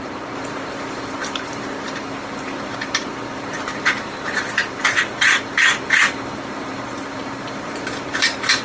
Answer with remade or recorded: remade